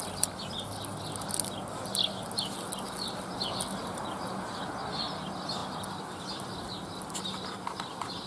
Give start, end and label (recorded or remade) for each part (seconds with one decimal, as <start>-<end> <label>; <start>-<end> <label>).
0.0-8.3 recorded